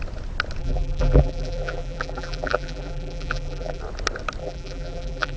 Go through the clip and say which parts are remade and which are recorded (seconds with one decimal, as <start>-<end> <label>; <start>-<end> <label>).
0.0-0.6 recorded; 0.6-3.8 remade; 3.8-4.4 recorded; 4.4-5.4 remade